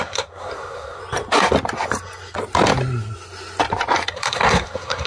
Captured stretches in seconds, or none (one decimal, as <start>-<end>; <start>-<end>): 1.0-4.1